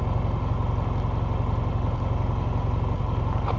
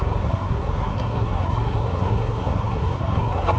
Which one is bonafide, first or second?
first